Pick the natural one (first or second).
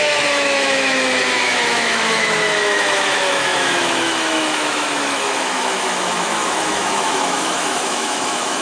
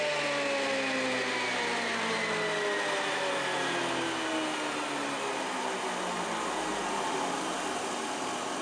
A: second